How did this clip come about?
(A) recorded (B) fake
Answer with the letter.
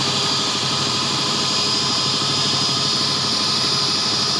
A